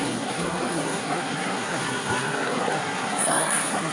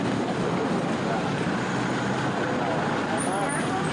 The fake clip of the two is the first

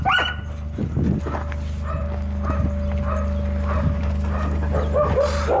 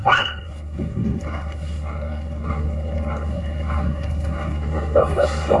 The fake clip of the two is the second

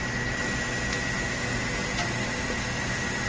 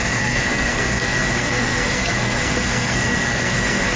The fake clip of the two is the second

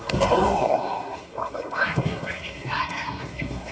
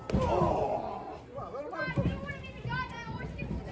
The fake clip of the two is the first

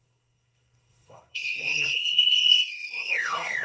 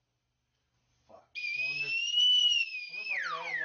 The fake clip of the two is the first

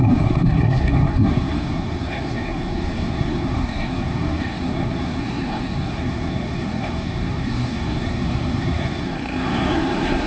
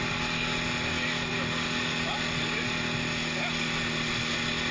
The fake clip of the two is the first